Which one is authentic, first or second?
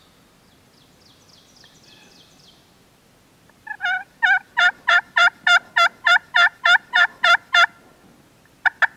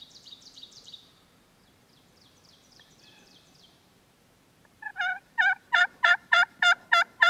first